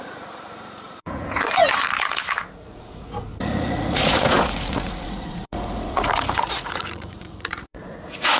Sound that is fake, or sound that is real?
fake